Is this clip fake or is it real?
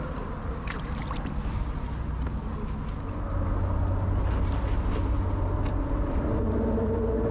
real